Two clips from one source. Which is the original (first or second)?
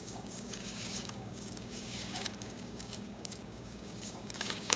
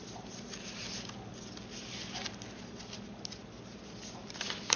second